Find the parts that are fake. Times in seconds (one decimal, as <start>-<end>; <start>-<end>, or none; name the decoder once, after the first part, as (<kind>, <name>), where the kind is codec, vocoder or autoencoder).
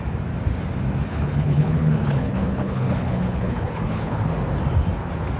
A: 1.1-4.3 (codec, HILCodec)